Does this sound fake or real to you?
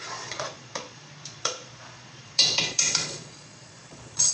fake